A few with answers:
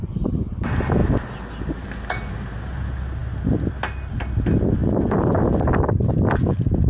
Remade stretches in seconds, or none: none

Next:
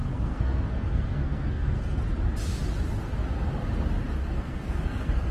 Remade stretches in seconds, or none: 0.0-2.0 (codec, SNAC); 4.2-5.3

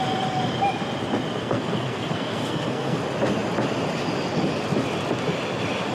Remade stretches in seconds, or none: 1.4-3.0 (codec, SNAC)

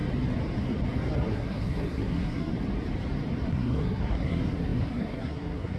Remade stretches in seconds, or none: 1.3-2.5 (codec, SNAC); 3.5-5.8

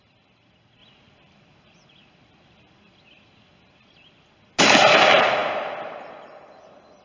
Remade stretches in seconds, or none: none